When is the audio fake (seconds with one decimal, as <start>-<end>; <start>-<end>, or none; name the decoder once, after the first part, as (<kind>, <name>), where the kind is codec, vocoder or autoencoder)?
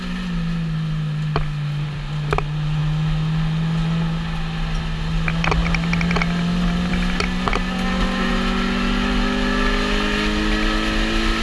none